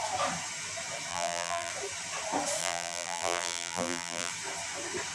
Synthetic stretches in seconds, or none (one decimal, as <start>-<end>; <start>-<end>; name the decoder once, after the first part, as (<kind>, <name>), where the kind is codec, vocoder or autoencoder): 1.1-1.7 (vocoder, BigVGAN v2); 2.6-4.3